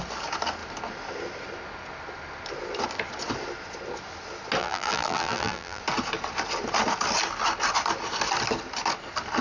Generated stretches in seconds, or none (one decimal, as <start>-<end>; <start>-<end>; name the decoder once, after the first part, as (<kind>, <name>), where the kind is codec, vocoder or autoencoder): 4.6-5.8 (vocoder, BigVGAN v2)